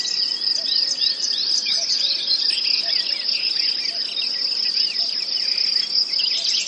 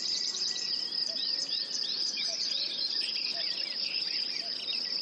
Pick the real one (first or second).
first